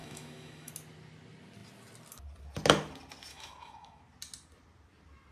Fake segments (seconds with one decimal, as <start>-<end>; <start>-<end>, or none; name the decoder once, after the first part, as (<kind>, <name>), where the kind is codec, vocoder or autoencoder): 0.0-0.7 (autoencoder, DAC-VAE); 3.3-4.0